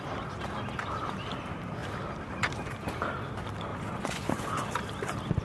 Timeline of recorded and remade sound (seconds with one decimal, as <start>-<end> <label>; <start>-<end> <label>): 0.0-3.7 recorded; 3.7-4.3 remade; 4.3-5.4 recorded